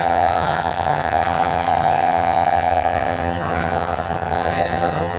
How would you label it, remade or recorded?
remade